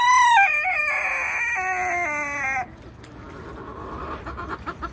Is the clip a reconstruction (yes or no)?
no